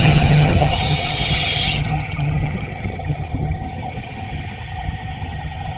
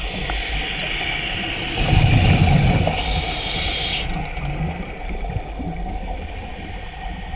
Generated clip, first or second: first